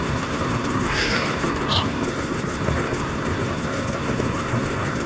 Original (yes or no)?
no